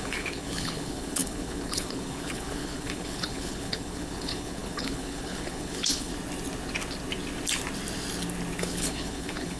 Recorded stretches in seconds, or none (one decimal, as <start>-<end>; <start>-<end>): 6.1-8.6